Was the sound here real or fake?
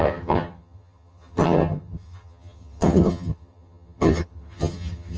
fake